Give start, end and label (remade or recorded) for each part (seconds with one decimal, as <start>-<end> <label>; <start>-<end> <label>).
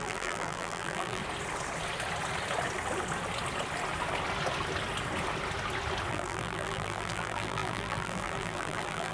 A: 0.0-1.2 remade; 1.2-6.1 recorded; 6.1-9.1 remade